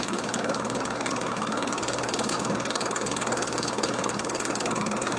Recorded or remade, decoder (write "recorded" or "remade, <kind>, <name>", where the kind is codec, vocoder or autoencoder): remade, codec, SNAC